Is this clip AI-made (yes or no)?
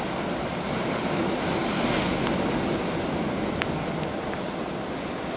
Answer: no